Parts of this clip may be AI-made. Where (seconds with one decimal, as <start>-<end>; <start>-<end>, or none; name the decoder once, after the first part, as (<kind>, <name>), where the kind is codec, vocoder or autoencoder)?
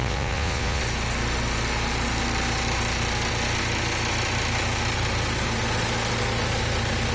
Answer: 0.0-0.8 (vocoder, Vocos)